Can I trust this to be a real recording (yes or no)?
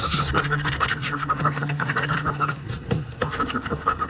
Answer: no